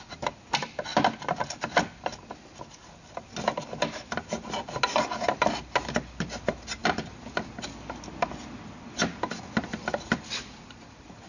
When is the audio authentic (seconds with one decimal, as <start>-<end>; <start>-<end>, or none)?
0.0-11.3